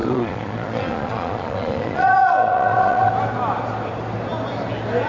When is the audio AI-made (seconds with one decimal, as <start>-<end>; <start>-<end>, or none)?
0.0-3.1